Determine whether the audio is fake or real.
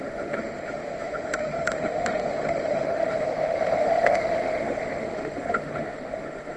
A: fake